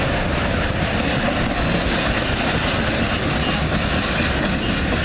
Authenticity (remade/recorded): recorded